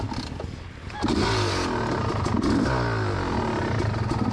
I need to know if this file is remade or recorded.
recorded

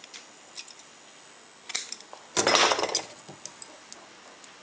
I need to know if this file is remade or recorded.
recorded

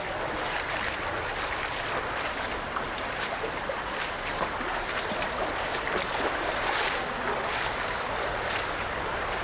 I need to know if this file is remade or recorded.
recorded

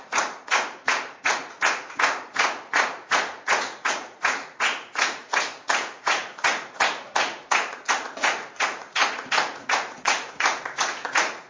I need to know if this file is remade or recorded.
remade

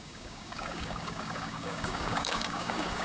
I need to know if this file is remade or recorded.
remade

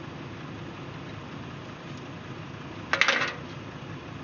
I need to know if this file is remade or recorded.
recorded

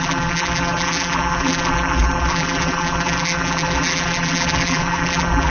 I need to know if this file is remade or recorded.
remade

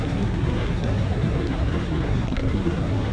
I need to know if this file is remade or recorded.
remade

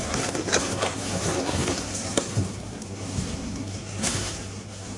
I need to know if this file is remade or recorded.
remade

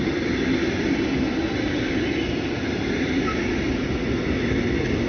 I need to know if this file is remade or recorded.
recorded